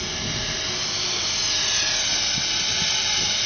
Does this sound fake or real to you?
real